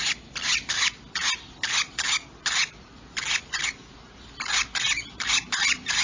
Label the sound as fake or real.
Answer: fake